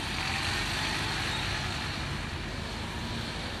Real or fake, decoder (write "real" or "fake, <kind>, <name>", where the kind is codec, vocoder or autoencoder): real